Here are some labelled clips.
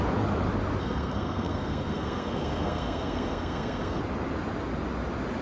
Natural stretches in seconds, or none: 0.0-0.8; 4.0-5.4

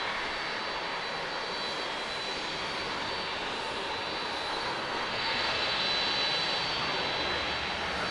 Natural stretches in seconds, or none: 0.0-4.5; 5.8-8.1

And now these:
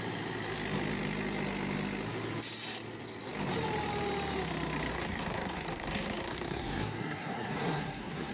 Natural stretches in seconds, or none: 0.0-4.9

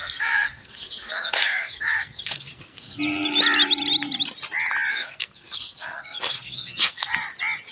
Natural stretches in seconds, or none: 3.0-4.9; 7.1-7.7

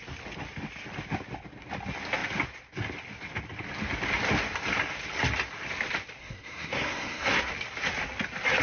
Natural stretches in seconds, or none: 0.0-6.2; 7.5-8.6